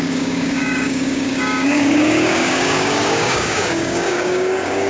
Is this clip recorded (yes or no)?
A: no